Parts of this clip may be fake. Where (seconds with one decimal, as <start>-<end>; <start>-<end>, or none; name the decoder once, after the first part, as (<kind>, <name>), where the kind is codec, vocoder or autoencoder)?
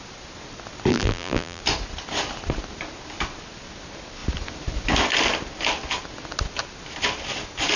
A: 0.9-1.6 (vocoder, BigVGAN v2)